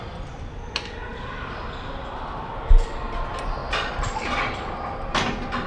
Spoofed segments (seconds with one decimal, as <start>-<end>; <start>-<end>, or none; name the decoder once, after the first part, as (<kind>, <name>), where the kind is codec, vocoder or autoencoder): none